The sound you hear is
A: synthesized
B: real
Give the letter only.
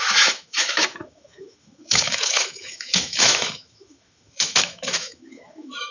A